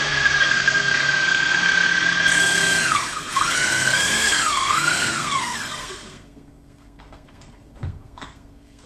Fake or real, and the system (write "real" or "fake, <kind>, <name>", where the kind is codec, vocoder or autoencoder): fake, codec, SNAC